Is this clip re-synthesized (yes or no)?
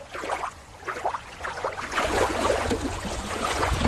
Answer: yes